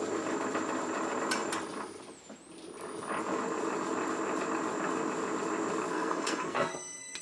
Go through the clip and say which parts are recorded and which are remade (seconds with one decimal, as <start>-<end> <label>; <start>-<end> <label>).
0.0-5.9 recorded; 5.9-7.2 remade